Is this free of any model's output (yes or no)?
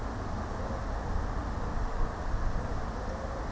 yes